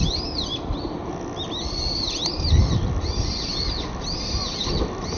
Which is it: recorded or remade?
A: recorded